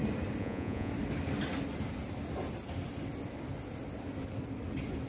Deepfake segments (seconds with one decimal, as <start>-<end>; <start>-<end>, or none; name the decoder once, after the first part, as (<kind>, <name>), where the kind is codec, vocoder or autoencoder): 0.4-0.9 (vocoder, Vocos)